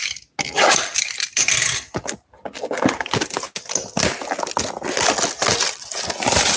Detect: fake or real real